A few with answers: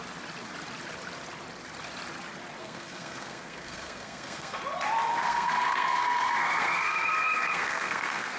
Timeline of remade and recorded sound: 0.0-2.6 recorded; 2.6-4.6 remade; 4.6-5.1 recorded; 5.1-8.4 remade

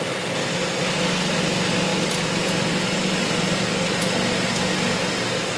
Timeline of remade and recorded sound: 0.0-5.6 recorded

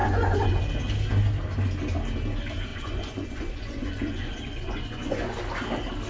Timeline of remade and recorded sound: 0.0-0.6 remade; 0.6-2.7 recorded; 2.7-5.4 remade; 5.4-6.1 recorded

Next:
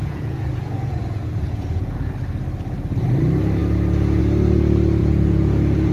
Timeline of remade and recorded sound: 0.0-2.1 remade; 2.1-5.0 recorded; 5.0-5.9 remade

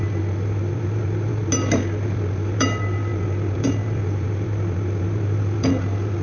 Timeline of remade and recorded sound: 0.0-1.4 remade; 1.4-2.0 recorded; 2.0-6.2 remade

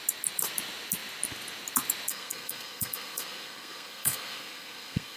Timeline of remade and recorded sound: 0.0-2.1 recorded; 2.1-5.2 remade

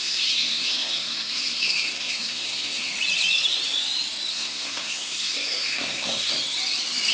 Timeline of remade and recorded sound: 0.0-2.9 remade; 2.9-4.3 recorded; 4.3-6.3 remade; 6.3-7.1 recorded